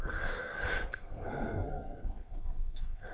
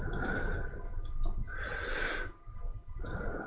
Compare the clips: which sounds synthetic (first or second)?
first